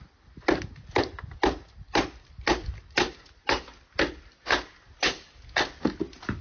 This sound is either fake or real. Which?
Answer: real